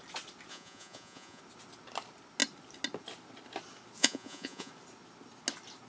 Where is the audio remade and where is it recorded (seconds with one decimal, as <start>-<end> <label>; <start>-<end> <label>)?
0.0-0.5 recorded; 0.5-1.4 remade; 1.4-4.0 recorded; 4.0-4.7 remade; 4.7-5.9 recorded